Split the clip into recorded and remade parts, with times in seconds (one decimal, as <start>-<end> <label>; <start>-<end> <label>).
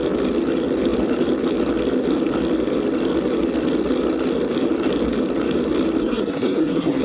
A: 0.0-6.0 recorded; 6.0-7.0 remade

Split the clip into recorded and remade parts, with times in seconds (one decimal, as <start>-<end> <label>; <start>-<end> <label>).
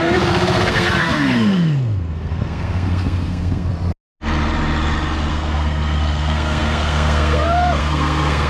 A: 0.0-3.7 remade; 3.7-5.3 recorded; 5.3-8.5 remade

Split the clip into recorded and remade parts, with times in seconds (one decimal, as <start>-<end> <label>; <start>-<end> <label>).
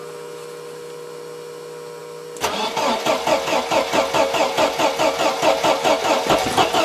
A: 0.0-6.8 recorded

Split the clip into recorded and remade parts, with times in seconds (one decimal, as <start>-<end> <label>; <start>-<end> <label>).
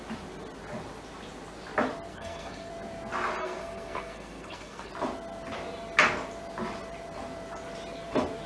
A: 0.0-2.1 recorded; 2.1-2.7 remade; 2.7-3.4 recorded; 3.4-4.9 remade; 4.9-8.5 recorded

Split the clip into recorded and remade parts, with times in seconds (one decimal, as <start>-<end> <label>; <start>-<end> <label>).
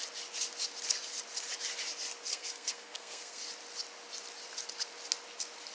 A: 0.0-2.3 recorded; 2.3-3.4 remade; 3.4-5.7 recorded